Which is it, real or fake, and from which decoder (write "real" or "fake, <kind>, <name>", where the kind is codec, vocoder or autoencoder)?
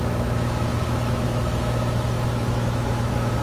fake, autoencoder, DAC-VAE